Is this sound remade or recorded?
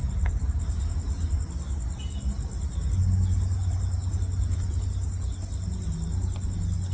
recorded